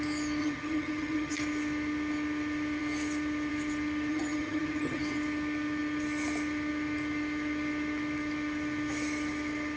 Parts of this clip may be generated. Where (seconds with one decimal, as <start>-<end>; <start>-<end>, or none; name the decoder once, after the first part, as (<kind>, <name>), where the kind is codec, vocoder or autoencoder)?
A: 0.4-1.3 (vocoder, HiFi-GAN); 4.1-5.0

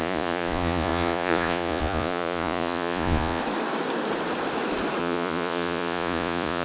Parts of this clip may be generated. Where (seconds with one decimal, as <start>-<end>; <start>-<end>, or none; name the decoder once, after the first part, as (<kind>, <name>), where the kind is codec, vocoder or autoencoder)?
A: 0.0-3.4 (vocoder, Vocos); 5.0-6.6